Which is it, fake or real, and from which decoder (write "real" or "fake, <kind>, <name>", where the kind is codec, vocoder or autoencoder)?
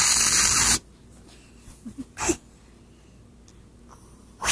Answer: real